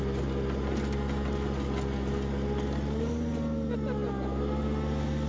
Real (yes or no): yes